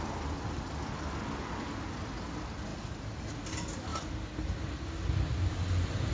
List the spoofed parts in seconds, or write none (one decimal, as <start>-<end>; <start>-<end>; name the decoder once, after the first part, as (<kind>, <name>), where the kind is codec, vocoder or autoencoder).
2.7-3.3 (vocoder, BigVGAN v2)